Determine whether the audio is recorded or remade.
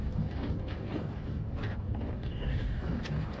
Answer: remade